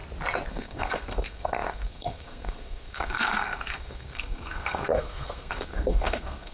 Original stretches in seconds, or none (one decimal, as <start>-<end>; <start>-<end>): 0.0-0.5